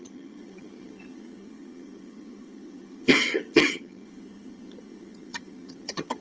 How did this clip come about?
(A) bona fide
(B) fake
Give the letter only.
B